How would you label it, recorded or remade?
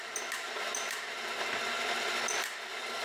recorded